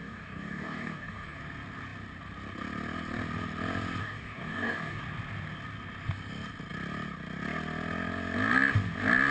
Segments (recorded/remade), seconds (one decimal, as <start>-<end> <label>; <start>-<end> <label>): 0.0-1.4 remade; 1.4-4.0 recorded; 4.0-5.0 remade; 5.0-9.3 recorded